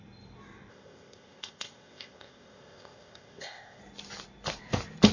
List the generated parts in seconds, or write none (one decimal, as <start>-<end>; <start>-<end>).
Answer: 0.7-3.8